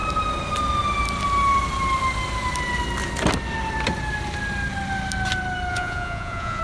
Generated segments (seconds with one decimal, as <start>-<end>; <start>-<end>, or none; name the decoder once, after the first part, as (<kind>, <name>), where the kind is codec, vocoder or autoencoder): 5.7-6.6 (vocoder, Vocos)